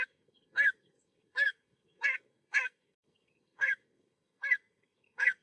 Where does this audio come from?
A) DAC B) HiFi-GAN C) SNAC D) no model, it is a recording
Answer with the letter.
C